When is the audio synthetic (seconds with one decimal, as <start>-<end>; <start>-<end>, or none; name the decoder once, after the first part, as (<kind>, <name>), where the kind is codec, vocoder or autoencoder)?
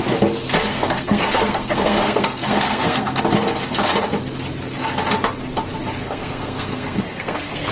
0.7-3.2 (codec, SNAC); 6.0-7.7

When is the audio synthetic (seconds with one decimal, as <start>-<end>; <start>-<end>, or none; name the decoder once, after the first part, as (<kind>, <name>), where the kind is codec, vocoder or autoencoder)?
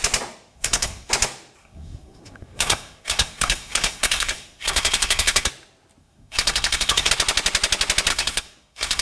0.5-1.1 (codec, SNAC); 1.6-5.5; 6.0-7.1; 8.1-9.0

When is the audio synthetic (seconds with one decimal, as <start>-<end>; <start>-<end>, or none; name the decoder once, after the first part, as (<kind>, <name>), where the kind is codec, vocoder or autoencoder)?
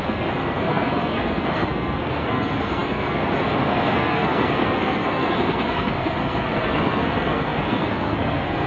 0.0-8.7 (codec, SNAC)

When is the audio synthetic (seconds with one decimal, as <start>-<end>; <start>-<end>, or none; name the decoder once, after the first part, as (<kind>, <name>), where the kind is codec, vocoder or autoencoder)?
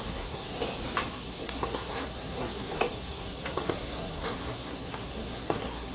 0.0-0.6 (codec, SNAC); 1.1-5.9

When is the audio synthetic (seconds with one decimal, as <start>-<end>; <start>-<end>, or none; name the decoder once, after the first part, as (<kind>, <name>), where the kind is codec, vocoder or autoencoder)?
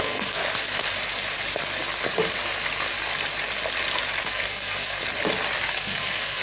0.0-0.4 (codec, SNAC); 4.2-5.0; 5.7-6.4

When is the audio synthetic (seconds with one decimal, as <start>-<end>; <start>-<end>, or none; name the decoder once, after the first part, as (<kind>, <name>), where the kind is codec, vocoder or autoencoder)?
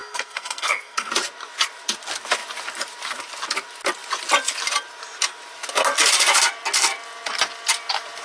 0.0-1.1 (codec, SNAC)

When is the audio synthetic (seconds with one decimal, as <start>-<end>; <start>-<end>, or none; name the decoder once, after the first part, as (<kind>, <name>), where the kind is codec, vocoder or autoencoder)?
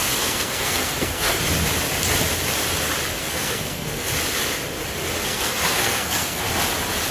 0.0-1.4 (codec, SNAC); 3.2-4.1; 5.2-6.4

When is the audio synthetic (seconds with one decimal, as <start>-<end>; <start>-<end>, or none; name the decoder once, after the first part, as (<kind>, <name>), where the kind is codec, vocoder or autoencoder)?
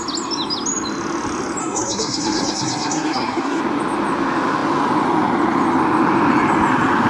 1.6-3.6 (codec, SNAC)